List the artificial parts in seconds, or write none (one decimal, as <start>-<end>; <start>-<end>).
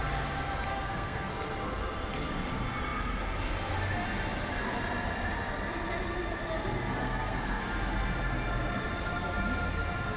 0.7-1.3; 7.0-7.6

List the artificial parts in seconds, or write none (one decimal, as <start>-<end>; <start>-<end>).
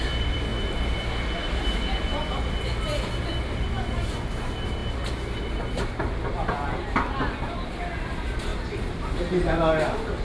none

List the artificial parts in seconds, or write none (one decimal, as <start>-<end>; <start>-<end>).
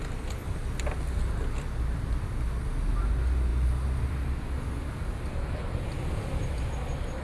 none